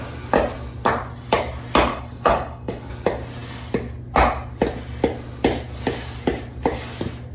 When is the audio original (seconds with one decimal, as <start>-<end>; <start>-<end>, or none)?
0.0-1.9; 2.9-7.3